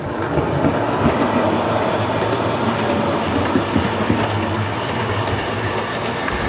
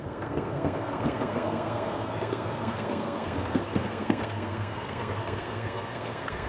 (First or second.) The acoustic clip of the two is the first